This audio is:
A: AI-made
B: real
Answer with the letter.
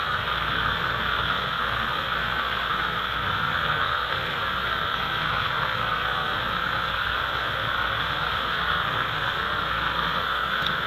A